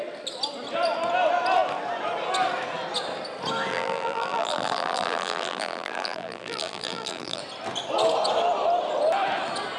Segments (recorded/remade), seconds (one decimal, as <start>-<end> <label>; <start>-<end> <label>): 0.0-3.7 recorded; 3.7-7.4 remade; 7.4-9.8 recorded